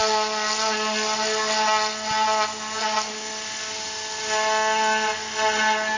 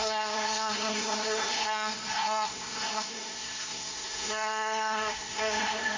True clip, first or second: first